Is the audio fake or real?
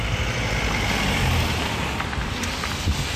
real